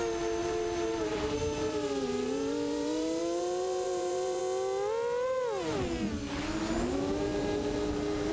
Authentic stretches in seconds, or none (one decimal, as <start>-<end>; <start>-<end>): 0.0-0.4; 4.4-8.3